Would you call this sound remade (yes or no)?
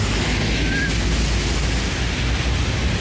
no